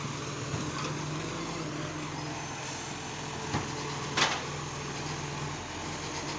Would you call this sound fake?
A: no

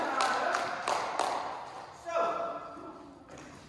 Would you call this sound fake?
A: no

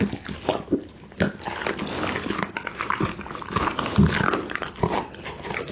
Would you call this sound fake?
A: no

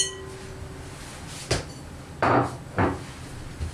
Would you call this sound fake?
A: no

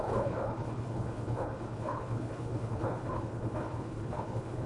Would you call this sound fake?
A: yes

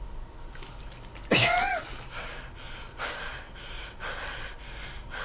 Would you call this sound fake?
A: no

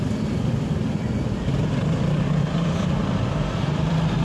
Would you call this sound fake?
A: yes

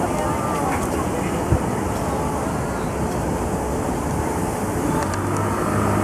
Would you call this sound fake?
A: no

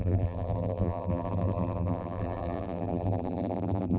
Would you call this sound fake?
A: yes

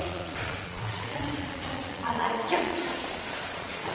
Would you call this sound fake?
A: yes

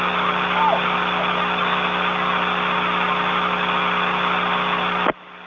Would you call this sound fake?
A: no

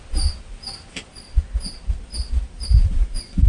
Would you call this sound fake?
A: no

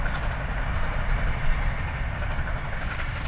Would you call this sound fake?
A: no